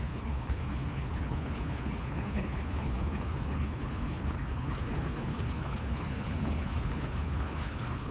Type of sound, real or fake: fake